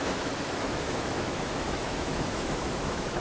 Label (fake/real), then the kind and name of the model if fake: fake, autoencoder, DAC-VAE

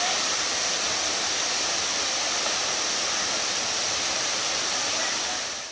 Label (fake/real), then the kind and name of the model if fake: real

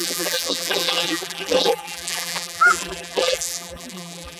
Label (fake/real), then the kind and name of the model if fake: fake, vocoder, BigVGAN v2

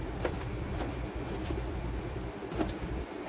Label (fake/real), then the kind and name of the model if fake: real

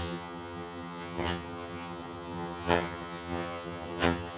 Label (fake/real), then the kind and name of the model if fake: fake, vocoder, HiFi-GAN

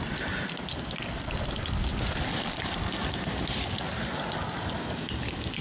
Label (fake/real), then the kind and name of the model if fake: real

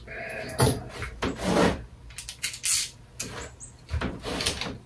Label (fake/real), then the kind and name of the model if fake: real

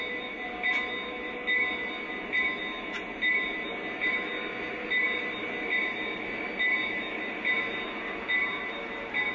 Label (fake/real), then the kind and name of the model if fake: real